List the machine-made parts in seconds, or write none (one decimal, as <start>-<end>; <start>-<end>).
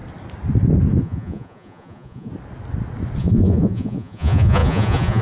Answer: 1.0-2.3; 3.2-5.2